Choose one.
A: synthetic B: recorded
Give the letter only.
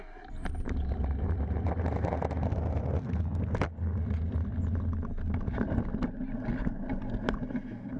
B